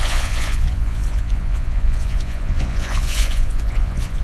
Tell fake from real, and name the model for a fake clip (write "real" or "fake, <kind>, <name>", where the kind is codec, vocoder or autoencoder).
fake, vocoder, Vocos